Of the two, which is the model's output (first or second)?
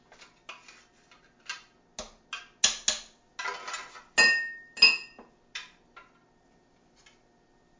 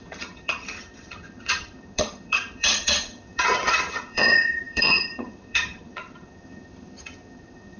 second